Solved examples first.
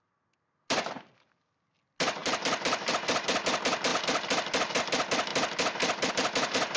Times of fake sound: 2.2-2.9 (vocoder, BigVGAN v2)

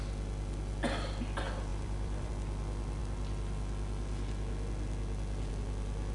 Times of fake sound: 1.7-2.3 (vocoder, BigVGAN v2)

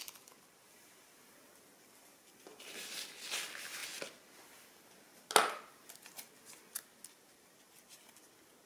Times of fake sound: none

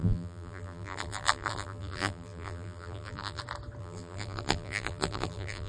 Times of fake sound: 0.0-3.4 (vocoder, BigVGAN v2); 3.8-5.7

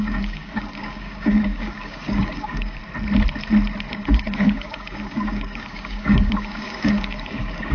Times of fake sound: 0.0-2.8 (codec, DAC); 3.9-7.7

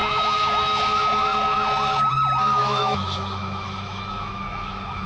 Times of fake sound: 0.0-0.8 (autoencoder, DAC-VAE); 2.6-5.1